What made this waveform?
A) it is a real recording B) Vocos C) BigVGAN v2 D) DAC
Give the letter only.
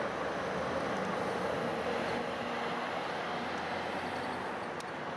A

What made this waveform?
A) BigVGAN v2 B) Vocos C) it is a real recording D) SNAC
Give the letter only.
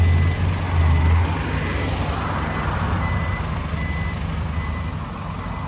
C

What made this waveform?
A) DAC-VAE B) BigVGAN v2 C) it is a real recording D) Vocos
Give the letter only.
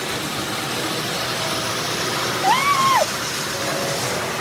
C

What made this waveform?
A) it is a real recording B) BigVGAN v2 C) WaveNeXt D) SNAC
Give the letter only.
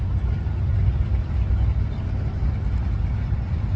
A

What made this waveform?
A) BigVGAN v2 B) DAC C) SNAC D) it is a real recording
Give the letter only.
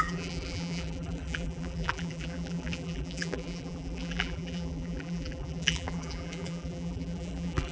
A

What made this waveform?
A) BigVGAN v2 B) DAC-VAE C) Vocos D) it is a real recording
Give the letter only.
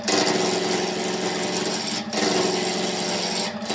D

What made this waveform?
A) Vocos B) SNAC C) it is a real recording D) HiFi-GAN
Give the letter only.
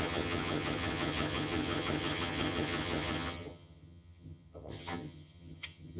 D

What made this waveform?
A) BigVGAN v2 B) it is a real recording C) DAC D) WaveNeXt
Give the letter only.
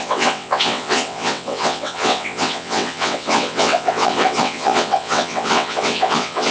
D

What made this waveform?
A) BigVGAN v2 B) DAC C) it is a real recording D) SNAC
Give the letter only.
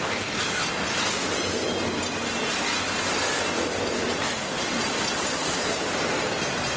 C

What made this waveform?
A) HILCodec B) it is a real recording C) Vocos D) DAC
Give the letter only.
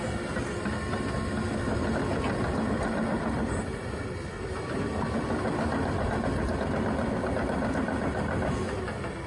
B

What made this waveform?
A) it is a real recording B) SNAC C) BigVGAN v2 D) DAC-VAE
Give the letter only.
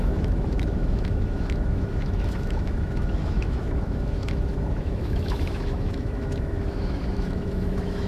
D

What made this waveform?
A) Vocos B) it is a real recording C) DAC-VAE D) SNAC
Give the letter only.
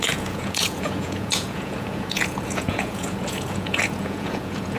A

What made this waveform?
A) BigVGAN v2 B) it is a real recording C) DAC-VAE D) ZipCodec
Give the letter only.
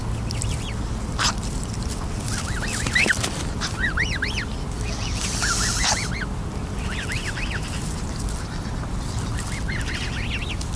B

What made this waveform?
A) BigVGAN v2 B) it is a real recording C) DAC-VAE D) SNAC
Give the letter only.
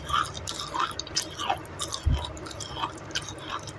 B